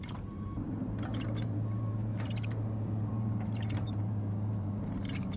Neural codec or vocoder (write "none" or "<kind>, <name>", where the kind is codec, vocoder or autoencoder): vocoder, BigVGAN v2